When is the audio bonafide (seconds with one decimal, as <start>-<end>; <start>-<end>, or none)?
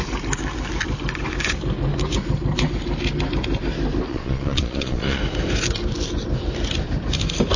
0.0-4.1; 5.2-7.6